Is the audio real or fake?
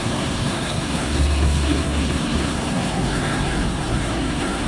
fake